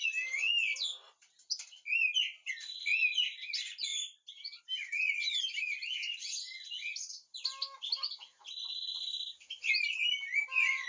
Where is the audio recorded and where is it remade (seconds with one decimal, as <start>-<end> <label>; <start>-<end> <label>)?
0.0-3.9 recorded; 3.9-4.6 remade; 4.6-8.9 recorded; 8.9-9.7 remade; 9.7-10.9 recorded